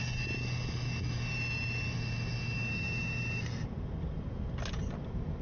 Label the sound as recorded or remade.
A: recorded